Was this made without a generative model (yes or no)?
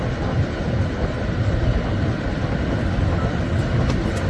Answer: yes